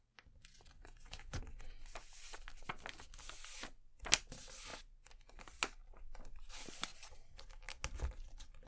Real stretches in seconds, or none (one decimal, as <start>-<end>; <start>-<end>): 0.0-0.8; 1.4-8.7